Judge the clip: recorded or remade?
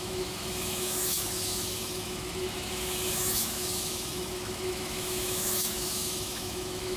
remade